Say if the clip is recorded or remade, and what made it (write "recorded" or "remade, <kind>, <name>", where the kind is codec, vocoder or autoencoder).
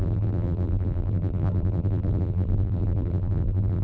remade, vocoder, BigVGAN v2